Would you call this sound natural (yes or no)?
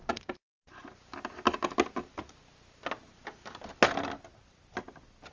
yes